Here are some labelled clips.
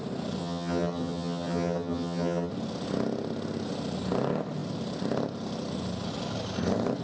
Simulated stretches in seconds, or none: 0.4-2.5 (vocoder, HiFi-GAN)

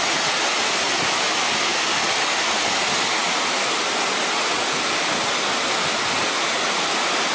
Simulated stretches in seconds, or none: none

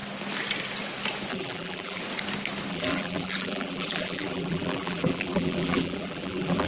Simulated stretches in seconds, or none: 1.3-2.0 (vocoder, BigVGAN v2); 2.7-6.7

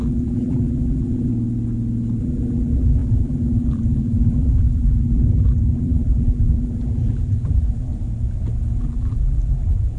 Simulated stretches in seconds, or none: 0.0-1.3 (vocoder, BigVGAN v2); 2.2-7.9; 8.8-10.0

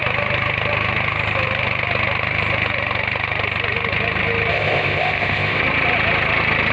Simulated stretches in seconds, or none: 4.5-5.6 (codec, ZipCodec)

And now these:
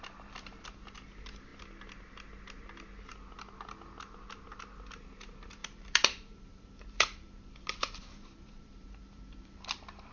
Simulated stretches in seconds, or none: 5.6-10.1 (vocoder, BigVGAN v2)

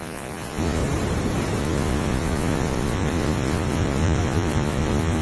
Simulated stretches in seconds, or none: 0.0-0.8 (vocoder, Vocos); 1.6-5.2

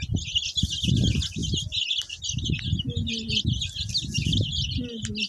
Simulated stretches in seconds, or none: none